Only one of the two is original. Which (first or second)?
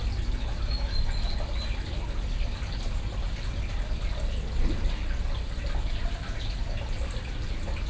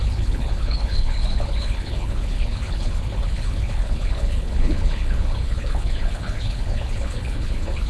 first